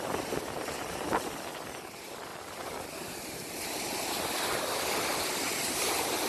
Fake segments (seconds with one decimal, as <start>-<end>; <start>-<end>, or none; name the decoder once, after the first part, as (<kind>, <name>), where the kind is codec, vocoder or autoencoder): 0.0-6.3 (vocoder, BigVGAN v2)